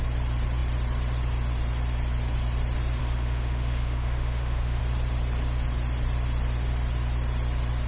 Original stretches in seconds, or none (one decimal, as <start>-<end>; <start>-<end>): 0.0-3.0; 4.8-7.9